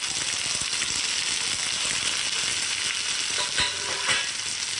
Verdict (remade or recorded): recorded